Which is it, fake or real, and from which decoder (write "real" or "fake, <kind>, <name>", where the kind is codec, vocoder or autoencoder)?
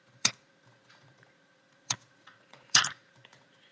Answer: fake, vocoder, Vocos